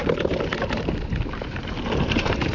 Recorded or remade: recorded